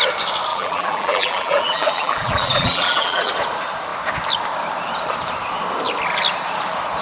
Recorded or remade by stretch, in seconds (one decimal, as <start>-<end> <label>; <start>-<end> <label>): 0.0-0.5 recorded; 0.5-3.3 remade; 3.3-7.0 recorded